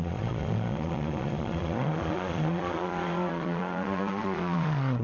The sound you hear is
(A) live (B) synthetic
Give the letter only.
B